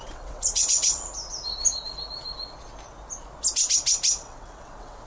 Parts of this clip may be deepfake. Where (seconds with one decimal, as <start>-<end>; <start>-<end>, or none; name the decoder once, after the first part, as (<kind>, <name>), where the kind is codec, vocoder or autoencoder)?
0.0-1.1 (vocoder, WaveNeXt); 4.2-5.1